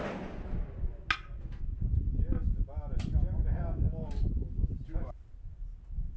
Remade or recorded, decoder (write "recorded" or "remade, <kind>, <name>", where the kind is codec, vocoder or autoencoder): recorded